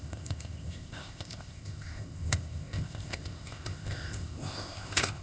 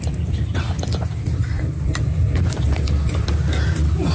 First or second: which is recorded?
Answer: second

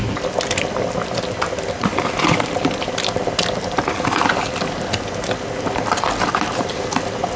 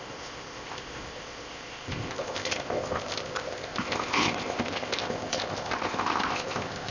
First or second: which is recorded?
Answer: first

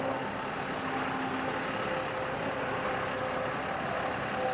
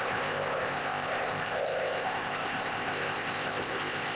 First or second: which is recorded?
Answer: first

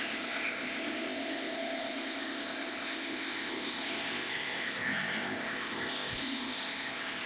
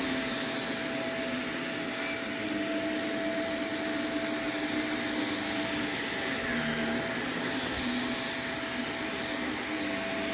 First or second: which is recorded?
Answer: second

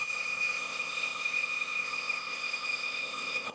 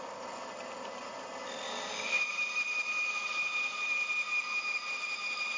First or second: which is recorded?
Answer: second